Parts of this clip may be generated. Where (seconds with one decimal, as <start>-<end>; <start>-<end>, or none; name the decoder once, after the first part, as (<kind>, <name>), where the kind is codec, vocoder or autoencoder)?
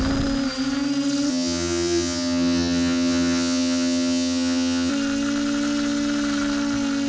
1.3-4.9 (vocoder, HiFi-GAN)